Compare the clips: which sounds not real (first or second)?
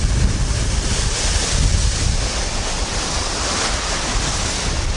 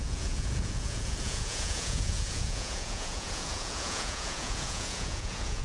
second